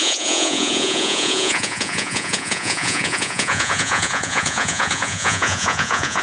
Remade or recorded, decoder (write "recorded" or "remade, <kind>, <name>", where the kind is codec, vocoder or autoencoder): remade, vocoder, Vocos